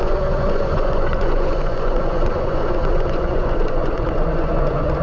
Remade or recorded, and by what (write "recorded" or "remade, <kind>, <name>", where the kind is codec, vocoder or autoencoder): remade, vocoder, Vocos